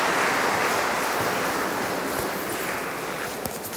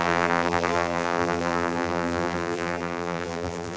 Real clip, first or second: first